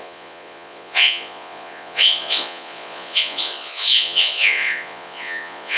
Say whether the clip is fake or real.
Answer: fake